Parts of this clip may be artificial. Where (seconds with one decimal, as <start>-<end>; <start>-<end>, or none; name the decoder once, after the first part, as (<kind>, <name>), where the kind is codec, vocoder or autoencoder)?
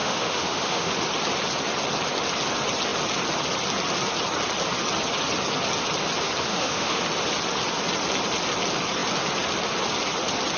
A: 0.0-0.9 (autoencoder, DAC-VAE); 6.5-7.0